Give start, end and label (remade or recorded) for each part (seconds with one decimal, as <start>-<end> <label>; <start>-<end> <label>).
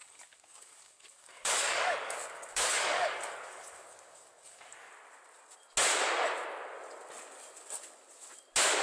0.0-4.9 remade; 4.9-8.8 recorded